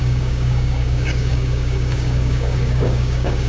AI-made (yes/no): yes